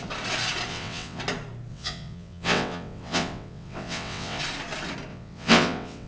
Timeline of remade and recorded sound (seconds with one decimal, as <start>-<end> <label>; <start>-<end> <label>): 0.0-0.7 recorded; 0.7-1.2 remade; 1.2-1.7 recorded; 1.7-4.4 remade; 4.4-5.1 recorded; 5.1-6.1 remade